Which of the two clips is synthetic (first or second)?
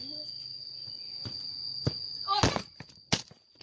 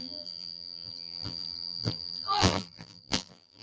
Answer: second